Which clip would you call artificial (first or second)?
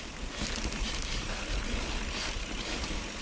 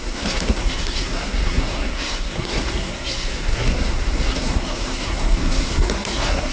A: second